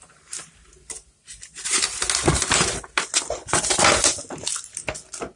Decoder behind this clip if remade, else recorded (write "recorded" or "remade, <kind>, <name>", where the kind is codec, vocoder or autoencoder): recorded